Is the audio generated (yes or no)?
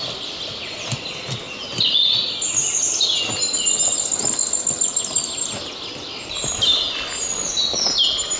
no